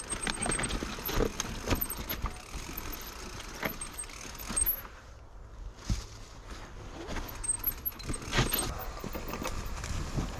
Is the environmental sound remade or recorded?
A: recorded